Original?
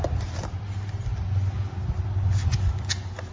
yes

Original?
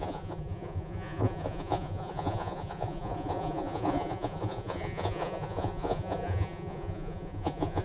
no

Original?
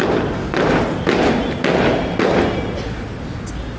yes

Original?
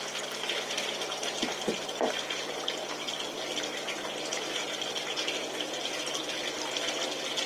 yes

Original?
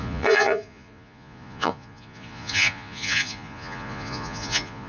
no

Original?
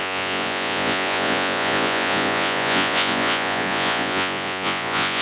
no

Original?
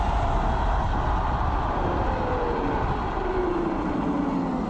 yes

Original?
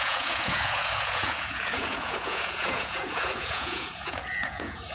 no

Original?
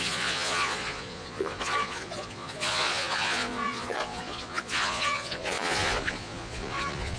no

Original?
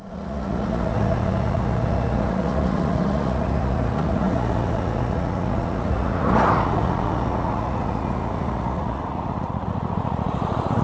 no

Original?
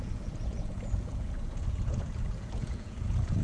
no